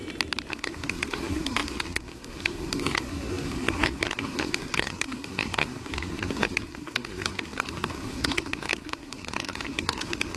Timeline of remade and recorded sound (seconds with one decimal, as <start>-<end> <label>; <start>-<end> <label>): 0.0-0.5 recorded; 0.5-10.4 remade